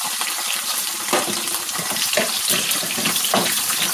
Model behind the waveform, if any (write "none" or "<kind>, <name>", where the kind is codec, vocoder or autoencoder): vocoder, BigVGAN v2